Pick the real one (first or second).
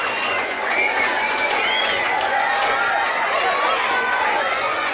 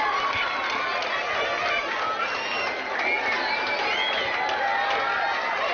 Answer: second